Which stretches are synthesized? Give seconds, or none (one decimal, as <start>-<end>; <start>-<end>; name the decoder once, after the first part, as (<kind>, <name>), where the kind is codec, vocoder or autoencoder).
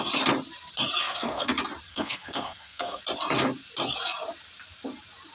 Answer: 1.0-1.5 (codec, SNAC); 1.9-3.0